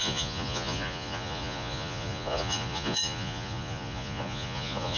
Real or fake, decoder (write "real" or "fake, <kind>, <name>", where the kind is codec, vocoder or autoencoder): fake, vocoder, Vocos